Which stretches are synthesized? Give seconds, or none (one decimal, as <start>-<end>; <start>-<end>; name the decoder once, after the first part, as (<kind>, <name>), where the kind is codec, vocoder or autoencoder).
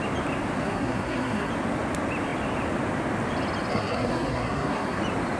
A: 0.6-1.5 (codec, SNAC); 3.7-5.0